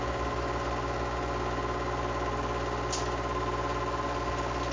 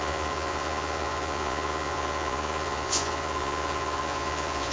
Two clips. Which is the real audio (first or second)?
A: first